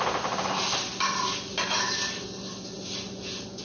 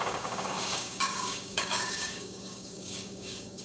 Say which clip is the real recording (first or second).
first